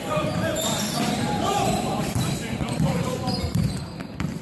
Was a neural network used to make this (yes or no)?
yes